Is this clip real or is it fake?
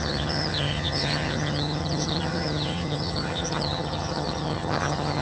fake